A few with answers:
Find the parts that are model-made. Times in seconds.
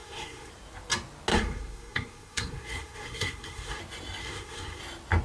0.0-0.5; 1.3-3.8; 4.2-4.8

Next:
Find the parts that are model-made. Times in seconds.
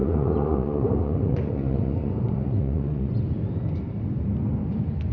0.0-3.1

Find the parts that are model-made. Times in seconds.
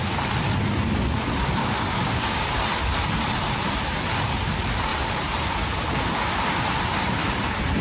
1.6-2.6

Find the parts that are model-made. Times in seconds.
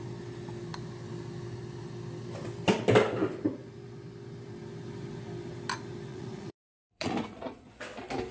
6.1-7.7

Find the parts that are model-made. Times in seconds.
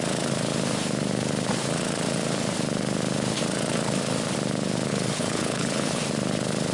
4.9-6.0